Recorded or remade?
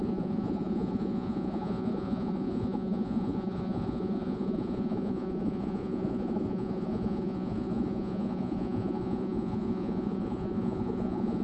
remade